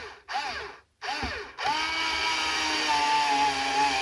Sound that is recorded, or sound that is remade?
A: recorded